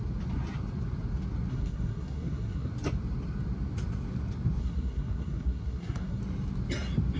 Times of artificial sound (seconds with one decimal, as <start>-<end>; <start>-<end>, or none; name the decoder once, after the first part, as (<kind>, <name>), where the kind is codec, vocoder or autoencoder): 1.5-2.7 (codec, SNAC); 4.6-6.2